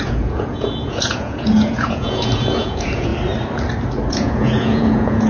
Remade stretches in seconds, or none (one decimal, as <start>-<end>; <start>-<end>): 0.0-3.1; 4.1-5.3